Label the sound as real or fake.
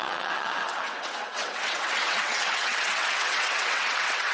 fake